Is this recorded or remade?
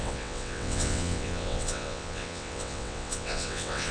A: remade